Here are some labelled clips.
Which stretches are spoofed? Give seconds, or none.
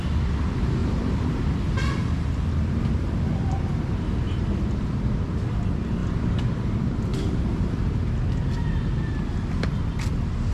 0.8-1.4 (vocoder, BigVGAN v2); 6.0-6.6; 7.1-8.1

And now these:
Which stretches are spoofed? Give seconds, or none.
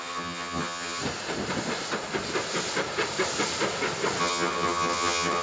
0.0-1.0 (vocoder, HiFi-GAN); 4.2-5.4